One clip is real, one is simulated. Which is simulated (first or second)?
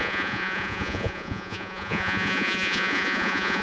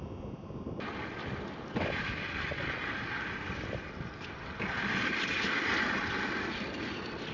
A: first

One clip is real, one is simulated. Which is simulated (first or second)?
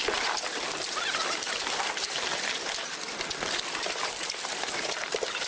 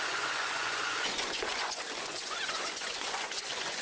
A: second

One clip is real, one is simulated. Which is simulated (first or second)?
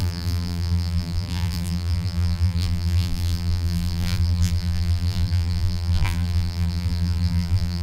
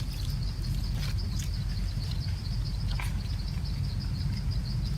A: first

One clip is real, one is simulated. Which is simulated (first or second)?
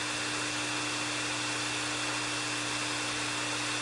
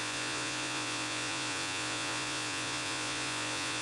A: second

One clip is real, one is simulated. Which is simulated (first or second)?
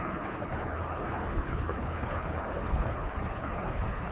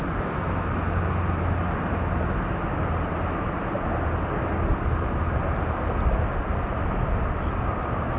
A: first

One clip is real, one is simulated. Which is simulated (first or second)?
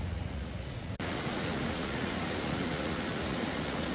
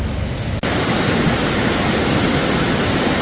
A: first